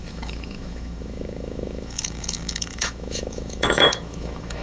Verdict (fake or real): fake